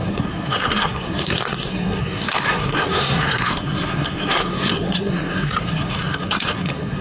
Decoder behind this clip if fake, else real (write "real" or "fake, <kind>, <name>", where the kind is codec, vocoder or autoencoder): fake, codec, SNAC